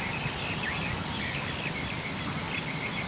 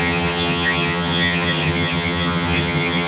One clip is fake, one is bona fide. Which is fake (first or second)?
second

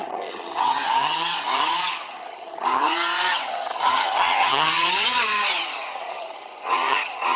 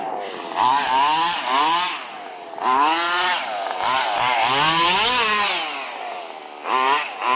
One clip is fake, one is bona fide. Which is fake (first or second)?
first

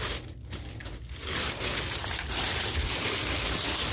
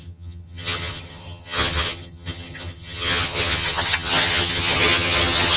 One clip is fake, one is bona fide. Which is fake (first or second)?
second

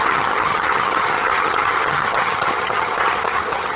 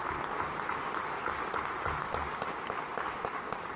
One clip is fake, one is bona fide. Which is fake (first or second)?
first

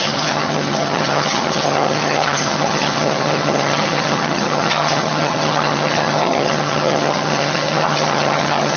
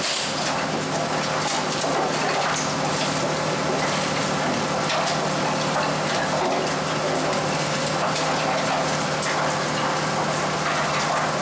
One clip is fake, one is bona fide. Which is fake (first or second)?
first